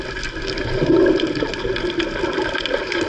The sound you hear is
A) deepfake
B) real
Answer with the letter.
B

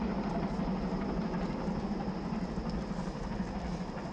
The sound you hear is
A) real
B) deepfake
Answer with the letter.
A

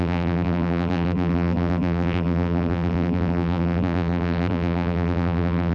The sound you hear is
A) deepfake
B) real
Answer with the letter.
A